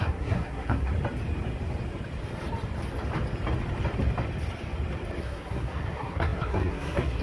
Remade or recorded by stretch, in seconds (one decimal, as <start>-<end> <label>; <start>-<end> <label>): 0.0-0.9 remade; 0.9-5.2 recorded; 5.2-7.2 remade